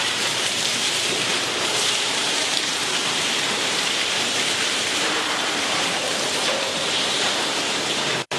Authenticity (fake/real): fake